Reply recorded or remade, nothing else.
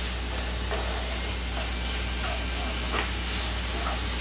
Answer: recorded